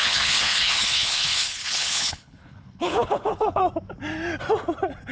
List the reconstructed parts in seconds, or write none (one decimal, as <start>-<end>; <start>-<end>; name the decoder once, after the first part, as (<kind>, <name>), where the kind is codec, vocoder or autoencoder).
0.0-3.6 (codec, HILCodec)